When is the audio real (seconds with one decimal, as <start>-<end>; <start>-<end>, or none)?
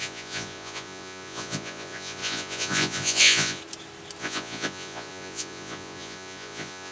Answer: 3.6-4.2